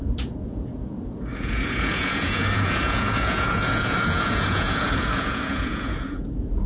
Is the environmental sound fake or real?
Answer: fake